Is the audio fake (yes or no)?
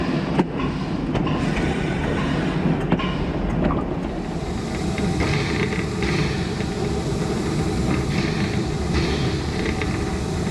no